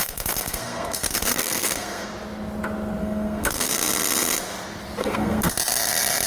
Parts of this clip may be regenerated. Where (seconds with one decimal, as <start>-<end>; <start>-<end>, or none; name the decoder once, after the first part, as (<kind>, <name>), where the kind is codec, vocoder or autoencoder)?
0.0-2.1 (codec, SNAC); 3.0-3.7; 5.0-5.5